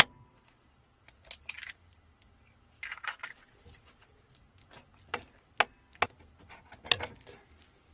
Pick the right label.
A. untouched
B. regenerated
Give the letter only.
A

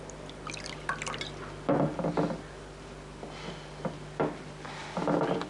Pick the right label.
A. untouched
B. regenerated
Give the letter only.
A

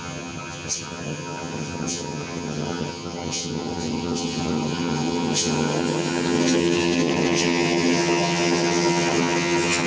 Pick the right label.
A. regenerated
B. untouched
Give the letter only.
A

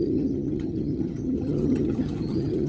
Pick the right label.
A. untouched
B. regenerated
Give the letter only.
B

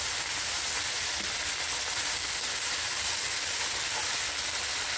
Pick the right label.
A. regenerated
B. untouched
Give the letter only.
B